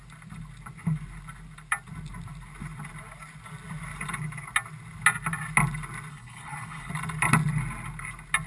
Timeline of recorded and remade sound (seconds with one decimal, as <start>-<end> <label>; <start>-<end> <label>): 0.0-6.1 recorded; 6.1-6.9 remade; 6.9-8.5 recorded